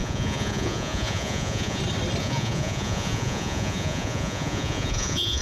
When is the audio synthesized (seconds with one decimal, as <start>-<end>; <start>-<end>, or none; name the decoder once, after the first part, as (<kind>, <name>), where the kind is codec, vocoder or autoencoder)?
0.0-1.8 (vocoder, Vocos); 2.2-5.4